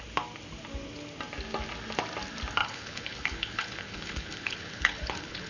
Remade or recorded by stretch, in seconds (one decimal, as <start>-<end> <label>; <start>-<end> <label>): 0.0-2.6 recorded; 2.6-5.5 remade